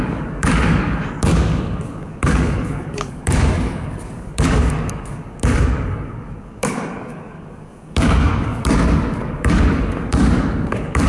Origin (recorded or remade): remade